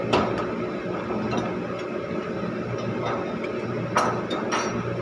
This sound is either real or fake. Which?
real